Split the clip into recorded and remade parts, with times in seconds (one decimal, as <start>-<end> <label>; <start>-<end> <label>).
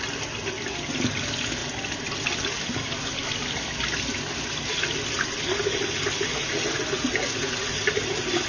0.0-8.5 recorded